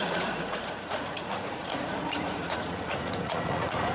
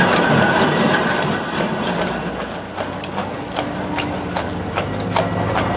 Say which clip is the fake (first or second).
first